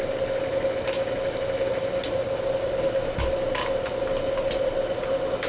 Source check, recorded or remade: recorded